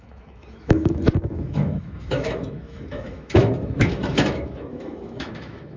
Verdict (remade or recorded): remade